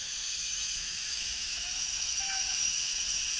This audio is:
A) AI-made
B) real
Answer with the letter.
A